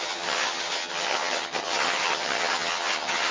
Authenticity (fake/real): fake